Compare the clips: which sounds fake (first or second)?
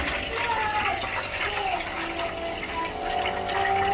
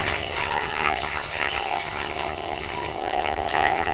second